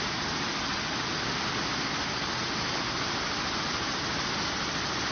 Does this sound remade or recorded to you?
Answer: recorded